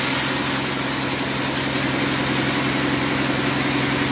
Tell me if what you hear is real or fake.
real